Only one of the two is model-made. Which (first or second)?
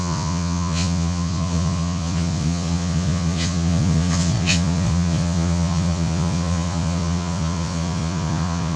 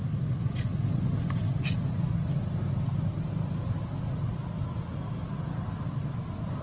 first